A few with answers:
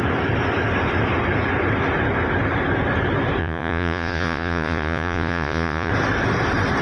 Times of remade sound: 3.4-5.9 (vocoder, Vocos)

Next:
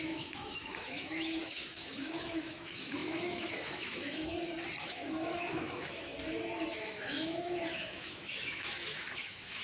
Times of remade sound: 0.0-4.3 (autoencoder, DAC-VAE); 4.8-6.1; 6.7-9.6

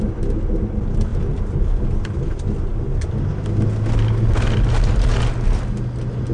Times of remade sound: none

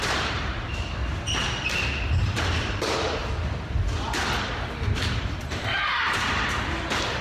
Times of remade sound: 0.0-1.0 (vocoder, BigVGAN v2); 2.8-3.2; 5.2-7.2

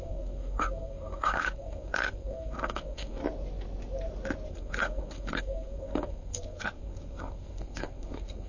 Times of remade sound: 0.0-3.2 (codec, SNAC); 4.5-8.5

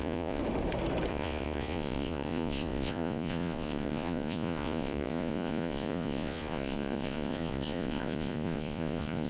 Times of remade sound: 0.0-0.4 (vocoder, Vocos); 1.1-9.3

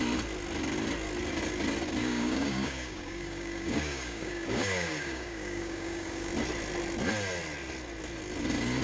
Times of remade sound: 2.0-6.3 (codec, DAC)

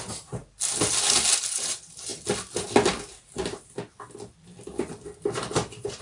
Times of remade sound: 0.0-0.4 (vocoder, BigVGAN v2); 1.4-2.1; 5.5-6.0